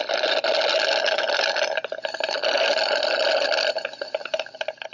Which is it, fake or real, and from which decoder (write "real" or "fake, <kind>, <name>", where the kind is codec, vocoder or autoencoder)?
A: real